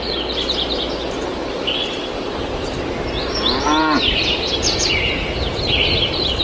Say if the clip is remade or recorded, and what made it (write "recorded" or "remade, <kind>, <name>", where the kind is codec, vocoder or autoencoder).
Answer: recorded